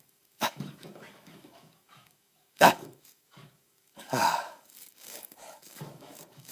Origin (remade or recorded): remade